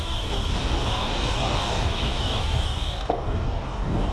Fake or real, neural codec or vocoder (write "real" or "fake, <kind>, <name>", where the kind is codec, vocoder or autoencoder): fake, codec, DAC